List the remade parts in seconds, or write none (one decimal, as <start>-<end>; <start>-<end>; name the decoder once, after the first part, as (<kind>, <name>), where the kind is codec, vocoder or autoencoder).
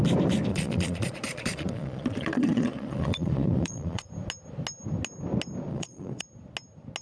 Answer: 0.5-4.1 (vocoder, Vocos); 5.7-6.2